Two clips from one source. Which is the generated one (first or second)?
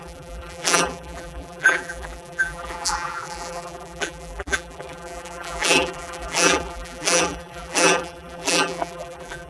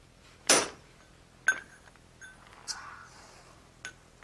first